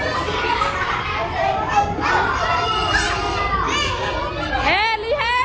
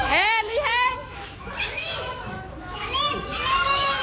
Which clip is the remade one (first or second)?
second